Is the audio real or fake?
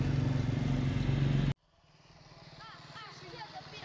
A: real